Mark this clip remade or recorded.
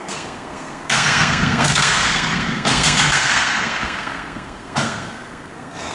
remade